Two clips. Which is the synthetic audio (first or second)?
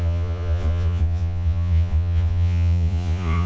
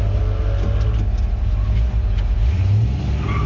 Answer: first